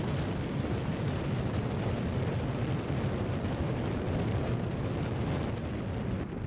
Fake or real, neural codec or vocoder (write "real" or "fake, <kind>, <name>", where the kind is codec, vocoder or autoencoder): real